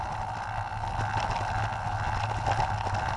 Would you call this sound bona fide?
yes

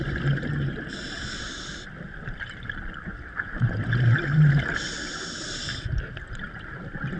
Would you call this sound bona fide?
yes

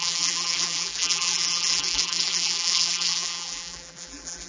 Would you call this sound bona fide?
no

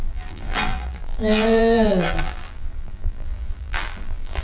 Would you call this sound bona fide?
no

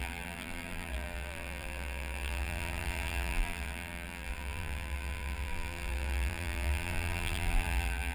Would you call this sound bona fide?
no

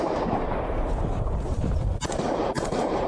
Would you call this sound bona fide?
no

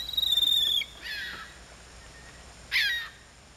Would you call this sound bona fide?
yes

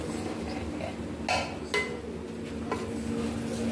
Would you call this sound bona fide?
yes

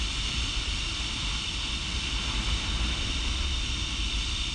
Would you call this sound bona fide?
no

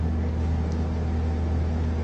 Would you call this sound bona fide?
yes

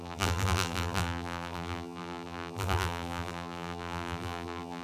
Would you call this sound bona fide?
no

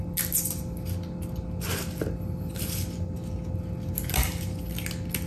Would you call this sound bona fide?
yes